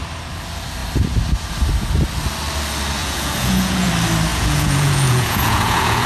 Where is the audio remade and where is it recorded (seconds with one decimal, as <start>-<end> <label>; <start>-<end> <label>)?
0.0-3.0 recorded; 3.0-3.9 remade; 3.9-4.3 recorded; 4.3-6.1 remade